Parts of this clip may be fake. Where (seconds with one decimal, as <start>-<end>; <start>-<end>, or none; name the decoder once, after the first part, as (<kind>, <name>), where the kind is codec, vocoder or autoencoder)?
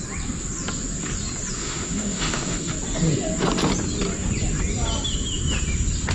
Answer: 1.6-2.7 (autoencoder, DAC-VAE)